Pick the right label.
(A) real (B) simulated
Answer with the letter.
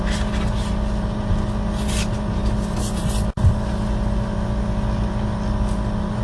A